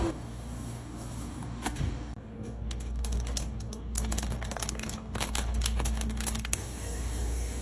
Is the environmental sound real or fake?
fake